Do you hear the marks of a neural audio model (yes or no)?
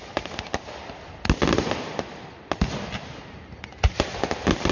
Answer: no